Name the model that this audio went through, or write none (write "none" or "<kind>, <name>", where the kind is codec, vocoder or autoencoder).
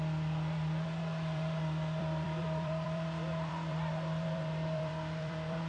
vocoder, BigVGAN v2